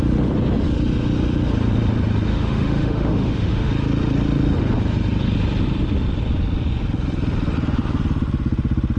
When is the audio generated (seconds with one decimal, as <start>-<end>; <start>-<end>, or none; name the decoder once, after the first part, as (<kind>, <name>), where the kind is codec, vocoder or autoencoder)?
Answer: 2.3-3.7 (autoencoder, DAC-VAE)